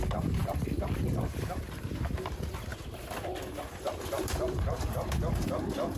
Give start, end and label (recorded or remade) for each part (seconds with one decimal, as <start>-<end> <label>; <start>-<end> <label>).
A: 0.0-2.7 remade; 2.7-3.5 recorded; 3.5-6.0 remade